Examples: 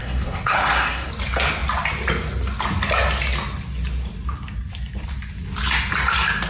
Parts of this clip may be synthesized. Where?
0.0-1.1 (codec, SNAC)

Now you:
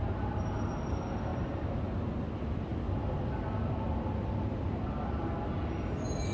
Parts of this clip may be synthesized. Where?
none

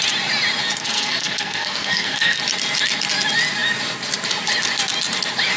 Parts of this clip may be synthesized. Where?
0.8-2.4 (codec, SNAC)

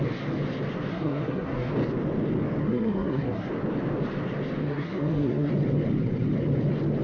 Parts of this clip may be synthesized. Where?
0.9-1.7 (codec, SNAC); 2.6-3.5; 4.6-5.5

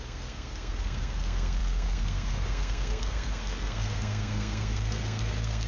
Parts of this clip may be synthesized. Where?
0.0-5.7 (codec, SNAC)

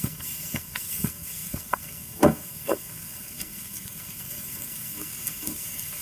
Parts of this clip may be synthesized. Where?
0.0-6.0 (codec, SNAC)

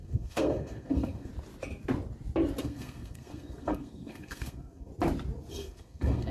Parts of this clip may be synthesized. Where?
0.0-1.3 (codec, SNAC); 2.6-4.9; 5.5-6.3